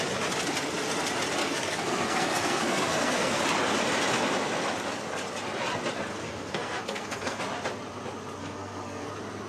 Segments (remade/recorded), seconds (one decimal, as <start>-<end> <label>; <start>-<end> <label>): 0.0-1.4 recorded; 1.4-3.4 remade; 3.4-6.1 recorded; 6.1-7.4 remade; 7.4-8.4 recorded; 8.4-9.1 remade; 9.1-9.5 recorded